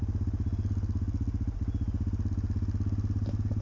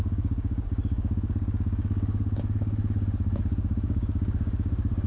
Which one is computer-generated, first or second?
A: second